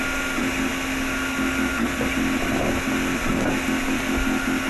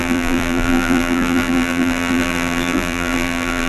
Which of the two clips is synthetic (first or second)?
second